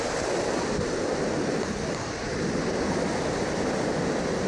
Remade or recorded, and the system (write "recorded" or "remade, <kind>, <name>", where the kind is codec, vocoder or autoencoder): recorded